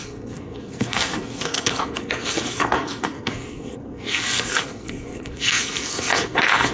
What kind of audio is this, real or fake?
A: fake